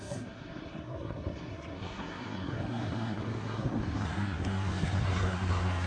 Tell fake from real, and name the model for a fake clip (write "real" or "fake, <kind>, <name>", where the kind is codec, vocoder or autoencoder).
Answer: fake, codec, SNAC